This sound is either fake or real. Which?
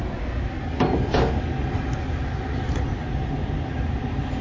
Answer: real